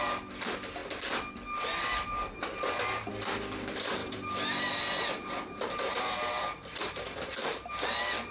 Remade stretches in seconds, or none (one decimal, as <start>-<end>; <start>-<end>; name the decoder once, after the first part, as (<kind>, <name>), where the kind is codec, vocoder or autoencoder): 4.0-7.7 (vocoder, BigVGAN v2)